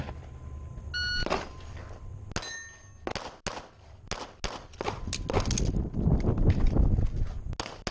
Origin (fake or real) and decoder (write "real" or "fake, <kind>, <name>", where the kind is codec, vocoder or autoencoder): real